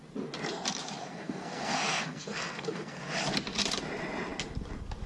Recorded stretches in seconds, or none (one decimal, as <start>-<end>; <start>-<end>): 0.0-1.0; 3.0-5.1